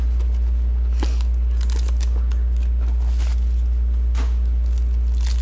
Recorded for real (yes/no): yes